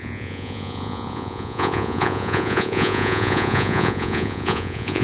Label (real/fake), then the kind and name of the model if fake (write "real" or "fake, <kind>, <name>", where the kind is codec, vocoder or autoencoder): fake, vocoder, Vocos